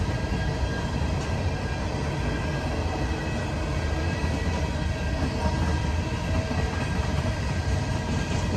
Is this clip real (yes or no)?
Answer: yes